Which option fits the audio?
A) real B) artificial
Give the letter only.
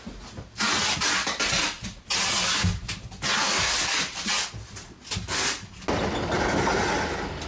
A